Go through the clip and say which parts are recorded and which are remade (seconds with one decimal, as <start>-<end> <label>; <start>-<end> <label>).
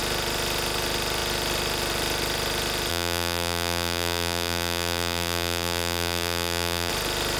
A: 0.0-2.9 recorded; 2.9-6.9 remade; 6.9-7.4 recorded